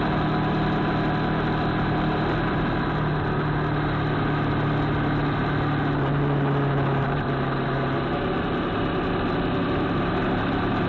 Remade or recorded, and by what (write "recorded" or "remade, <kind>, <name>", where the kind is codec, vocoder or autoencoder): recorded